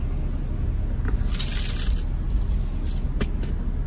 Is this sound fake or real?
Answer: real